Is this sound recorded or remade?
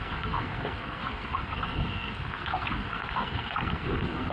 remade